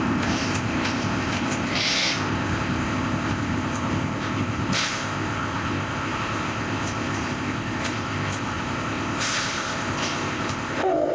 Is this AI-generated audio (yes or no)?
yes